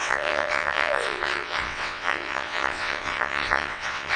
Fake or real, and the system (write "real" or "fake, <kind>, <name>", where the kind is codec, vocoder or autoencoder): fake, vocoder, WaveNeXt